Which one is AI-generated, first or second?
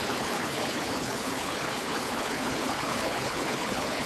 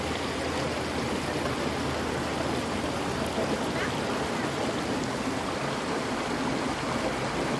first